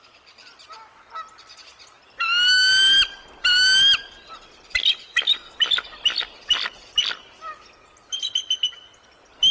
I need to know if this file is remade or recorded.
recorded